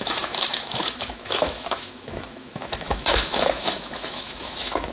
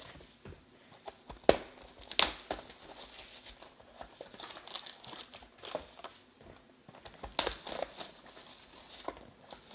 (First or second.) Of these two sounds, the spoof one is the first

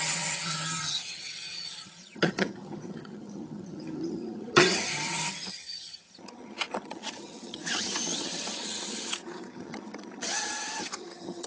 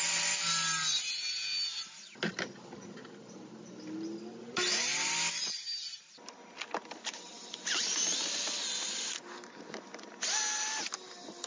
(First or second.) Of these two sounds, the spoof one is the first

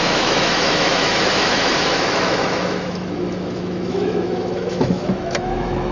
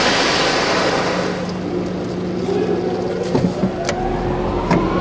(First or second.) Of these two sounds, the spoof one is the first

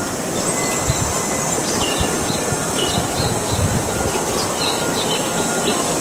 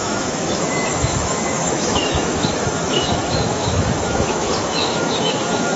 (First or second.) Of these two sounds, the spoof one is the second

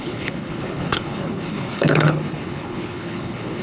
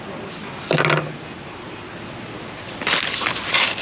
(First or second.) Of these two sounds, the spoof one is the first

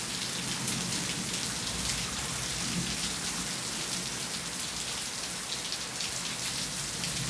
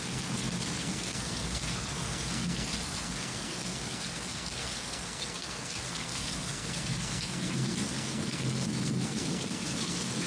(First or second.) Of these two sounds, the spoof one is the second